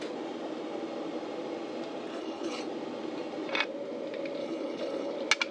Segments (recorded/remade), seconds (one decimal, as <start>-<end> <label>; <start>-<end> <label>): 0.0-2.1 recorded; 2.1-2.6 remade; 2.6-4.4 recorded; 4.4-5.1 remade; 5.1-5.5 recorded